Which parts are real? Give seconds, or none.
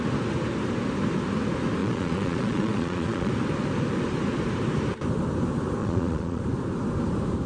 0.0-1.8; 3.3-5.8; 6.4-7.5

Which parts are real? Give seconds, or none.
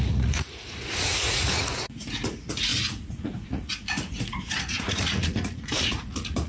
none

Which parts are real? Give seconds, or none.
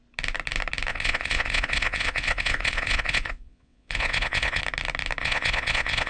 0.0-0.9; 4.6-5.2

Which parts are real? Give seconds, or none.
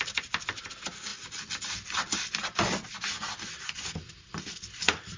0.0-5.2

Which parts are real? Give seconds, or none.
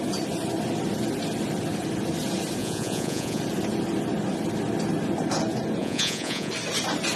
0.0-2.6; 3.4-5.8; 6.5-7.2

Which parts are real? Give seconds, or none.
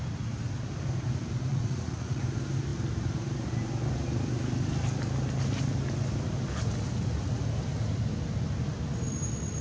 0.0-1.5; 2.2-9.6